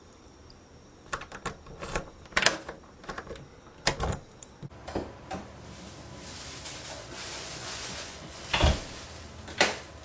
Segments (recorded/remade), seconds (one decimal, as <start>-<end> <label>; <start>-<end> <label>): 0.0-7.0 recorded; 7.0-8.4 remade; 8.4-10.0 recorded